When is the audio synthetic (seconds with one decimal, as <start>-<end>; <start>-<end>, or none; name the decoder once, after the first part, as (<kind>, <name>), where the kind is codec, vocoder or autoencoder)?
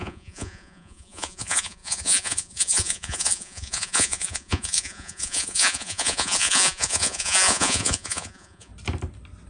0.0-8.7 (vocoder, Vocos)